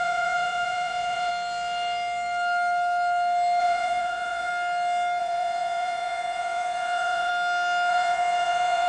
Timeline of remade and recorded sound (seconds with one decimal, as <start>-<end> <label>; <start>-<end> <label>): 0.0-1.3 remade; 1.3-3.6 recorded; 3.6-4.5 remade; 4.5-5.2 recorded; 5.2-7.3 remade; 7.3-7.9 recorded; 7.9-8.9 remade